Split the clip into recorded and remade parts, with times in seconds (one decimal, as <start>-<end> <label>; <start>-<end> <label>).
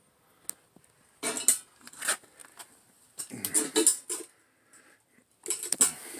0.0-6.2 recorded